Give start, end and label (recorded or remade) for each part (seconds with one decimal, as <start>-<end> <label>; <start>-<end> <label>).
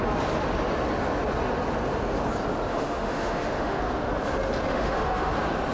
0.0-2.7 recorded; 2.7-3.8 remade; 3.8-4.7 recorded; 4.7-5.3 remade; 5.3-5.7 recorded